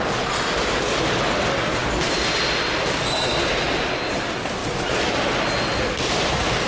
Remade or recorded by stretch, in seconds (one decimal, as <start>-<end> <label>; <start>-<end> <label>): 0.0-6.7 recorded